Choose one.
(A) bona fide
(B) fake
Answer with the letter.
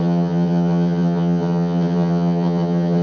B